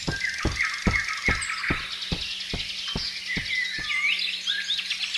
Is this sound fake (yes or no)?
no